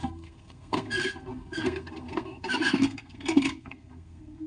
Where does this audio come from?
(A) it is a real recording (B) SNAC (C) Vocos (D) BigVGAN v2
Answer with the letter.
B